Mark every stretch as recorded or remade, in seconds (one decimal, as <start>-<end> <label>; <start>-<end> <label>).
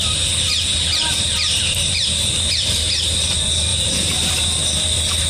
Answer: 0.0-0.7 recorded; 0.7-2.1 remade; 2.1-3.7 recorded; 3.7-4.3 remade; 4.3-5.3 recorded